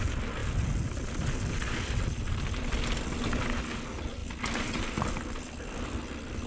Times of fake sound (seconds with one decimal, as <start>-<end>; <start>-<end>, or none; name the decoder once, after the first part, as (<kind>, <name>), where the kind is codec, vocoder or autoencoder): none